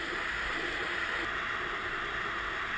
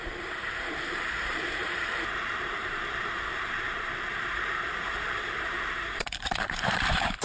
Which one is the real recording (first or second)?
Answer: first